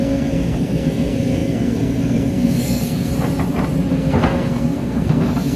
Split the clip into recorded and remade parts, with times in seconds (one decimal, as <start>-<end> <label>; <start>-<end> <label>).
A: 0.0-3.1 remade; 3.1-3.9 recorded; 3.9-5.6 remade